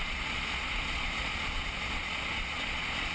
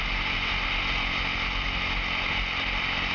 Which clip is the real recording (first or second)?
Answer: second